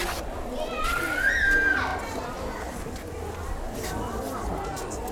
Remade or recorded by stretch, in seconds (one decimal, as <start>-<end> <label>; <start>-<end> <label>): 0.0-5.1 recorded